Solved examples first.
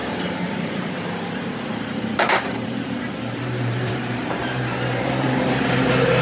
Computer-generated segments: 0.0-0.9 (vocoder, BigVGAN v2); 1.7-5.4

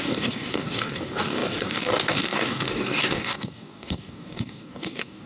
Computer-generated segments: 0.0-5.3 (codec, DAC)

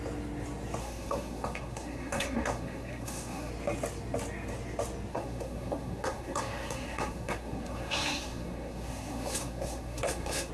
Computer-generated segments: 0.8-3.5 (codec, SNAC); 5.1-10.5

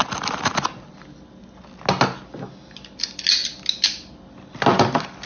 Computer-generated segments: none

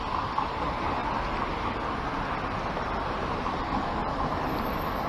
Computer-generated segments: none

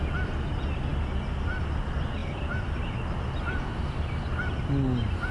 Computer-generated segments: none

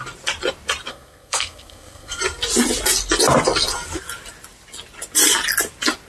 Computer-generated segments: 0.9-2.2 (codec, SNAC)

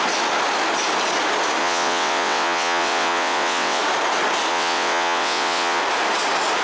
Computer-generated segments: 1.6-3.8 (vocoder, WaveNeXt); 4.5-5.8